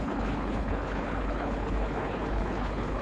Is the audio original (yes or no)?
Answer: no